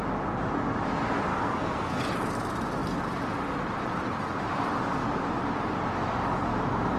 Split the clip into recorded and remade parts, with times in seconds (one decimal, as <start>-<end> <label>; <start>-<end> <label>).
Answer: 0.0-1.3 recorded; 1.3-2.0 remade; 2.0-7.0 recorded